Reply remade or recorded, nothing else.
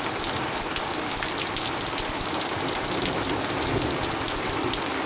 recorded